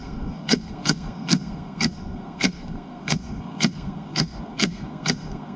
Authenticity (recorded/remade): remade